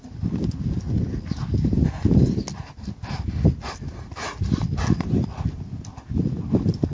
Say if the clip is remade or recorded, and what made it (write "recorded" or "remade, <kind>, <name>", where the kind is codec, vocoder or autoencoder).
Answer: recorded